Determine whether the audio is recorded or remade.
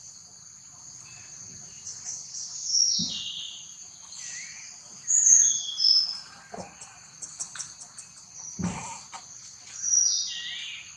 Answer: recorded